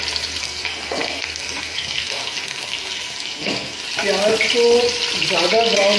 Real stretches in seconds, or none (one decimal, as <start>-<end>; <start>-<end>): 0.0-0.4; 3.8-6.0